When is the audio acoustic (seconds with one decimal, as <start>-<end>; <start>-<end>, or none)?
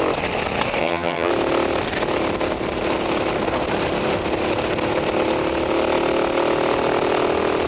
0.0-0.8; 1.3-7.7